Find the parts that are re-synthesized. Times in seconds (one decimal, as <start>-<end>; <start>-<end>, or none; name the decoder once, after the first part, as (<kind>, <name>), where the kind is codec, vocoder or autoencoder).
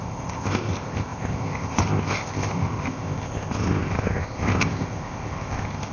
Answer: 0.0-5.9 (codec, ZipCodec)